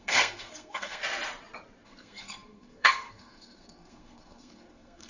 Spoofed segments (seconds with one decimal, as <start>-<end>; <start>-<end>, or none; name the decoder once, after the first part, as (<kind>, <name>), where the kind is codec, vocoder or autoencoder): 0.0-1.0 (codec, SNAC); 1.8-5.1